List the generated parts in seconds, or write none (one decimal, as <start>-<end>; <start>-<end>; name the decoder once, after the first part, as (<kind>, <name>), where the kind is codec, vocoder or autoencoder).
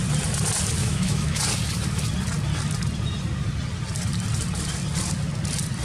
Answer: 0.8-1.4 (autoencoder, DAC-VAE)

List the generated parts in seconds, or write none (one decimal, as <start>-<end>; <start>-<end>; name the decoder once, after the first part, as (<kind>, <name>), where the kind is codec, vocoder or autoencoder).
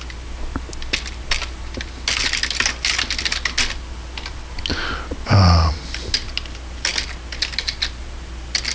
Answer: none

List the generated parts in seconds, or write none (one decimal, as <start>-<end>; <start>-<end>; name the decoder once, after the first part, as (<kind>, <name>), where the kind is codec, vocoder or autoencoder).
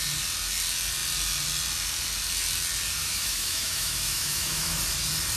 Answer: 3.0-4.8 (autoencoder, DAC-VAE)